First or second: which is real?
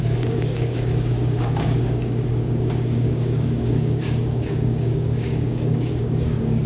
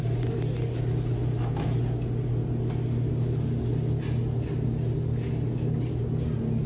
second